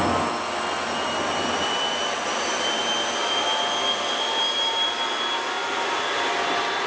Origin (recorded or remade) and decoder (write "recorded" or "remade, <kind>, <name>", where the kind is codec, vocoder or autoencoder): recorded